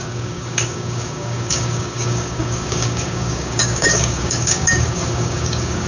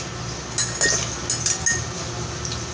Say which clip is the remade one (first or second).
first